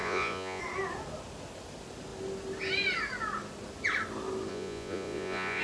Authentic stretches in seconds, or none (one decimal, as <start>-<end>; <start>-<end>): 0.6-4.5